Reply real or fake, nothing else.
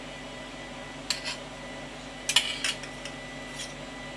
real